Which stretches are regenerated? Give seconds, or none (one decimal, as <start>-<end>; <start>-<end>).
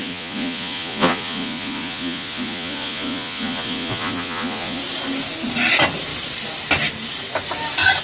0.0-4.8